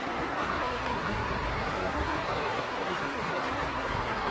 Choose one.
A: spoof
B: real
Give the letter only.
A